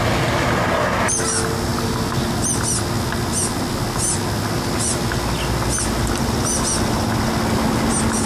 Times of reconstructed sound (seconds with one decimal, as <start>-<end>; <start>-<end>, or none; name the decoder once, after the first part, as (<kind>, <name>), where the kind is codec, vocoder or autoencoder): none